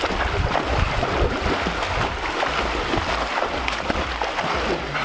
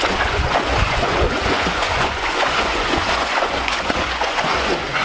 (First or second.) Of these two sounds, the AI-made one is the second